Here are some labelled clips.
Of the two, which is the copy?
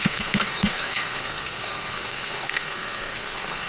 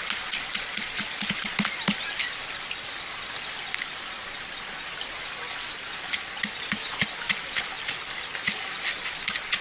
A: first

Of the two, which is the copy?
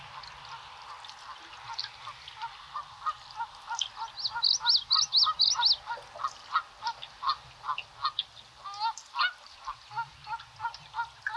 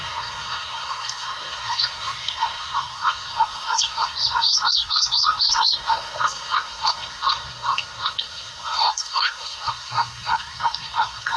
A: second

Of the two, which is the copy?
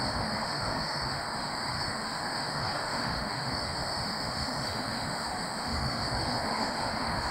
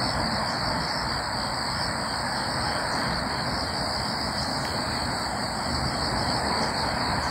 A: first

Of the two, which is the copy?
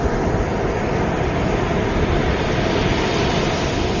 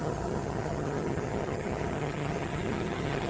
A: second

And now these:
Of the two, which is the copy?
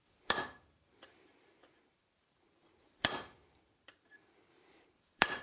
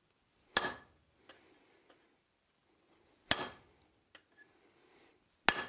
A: first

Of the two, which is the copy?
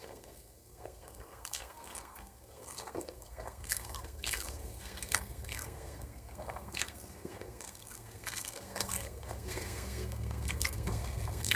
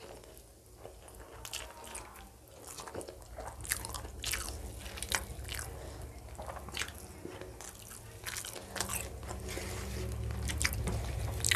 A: first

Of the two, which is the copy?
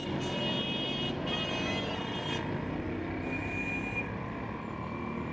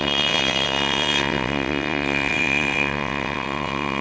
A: second